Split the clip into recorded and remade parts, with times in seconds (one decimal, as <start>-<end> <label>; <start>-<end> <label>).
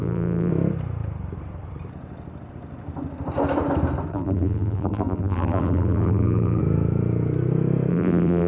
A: 0.0-0.5 remade; 0.5-4.1 recorded; 4.1-6.6 remade; 6.6-7.9 recorded; 7.9-8.5 remade